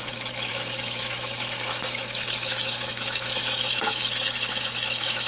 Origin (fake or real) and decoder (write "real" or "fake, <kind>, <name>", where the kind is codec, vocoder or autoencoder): fake, autoencoder, DAC-VAE